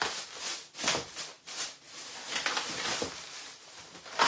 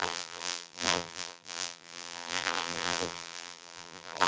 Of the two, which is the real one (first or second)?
first